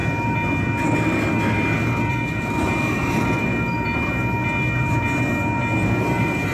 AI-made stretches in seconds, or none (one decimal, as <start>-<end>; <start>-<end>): 2.1-3.5; 6.0-6.5